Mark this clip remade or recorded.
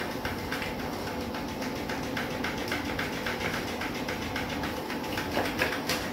recorded